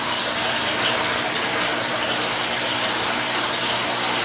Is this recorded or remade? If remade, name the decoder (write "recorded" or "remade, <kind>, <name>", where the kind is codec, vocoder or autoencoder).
recorded